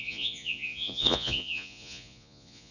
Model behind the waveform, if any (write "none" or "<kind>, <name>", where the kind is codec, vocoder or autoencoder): vocoder, Vocos